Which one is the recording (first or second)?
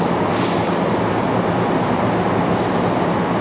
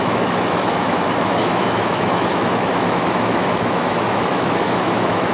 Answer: first